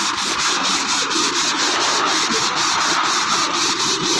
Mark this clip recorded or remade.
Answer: remade